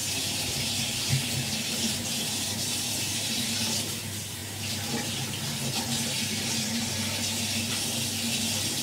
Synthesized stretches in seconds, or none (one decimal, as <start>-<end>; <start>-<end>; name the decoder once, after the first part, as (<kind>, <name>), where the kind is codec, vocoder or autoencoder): 0.0-3.9 (vocoder, BigVGAN v2)